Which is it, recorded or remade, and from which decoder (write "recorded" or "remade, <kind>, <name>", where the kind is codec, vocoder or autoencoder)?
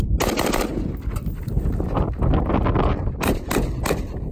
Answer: recorded